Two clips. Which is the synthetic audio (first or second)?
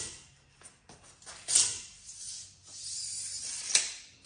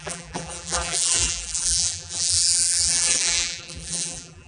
second